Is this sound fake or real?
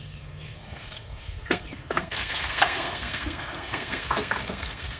fake